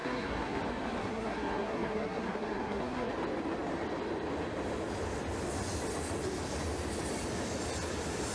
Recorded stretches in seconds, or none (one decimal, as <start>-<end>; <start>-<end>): 0.6-1.0; 3.1-8.3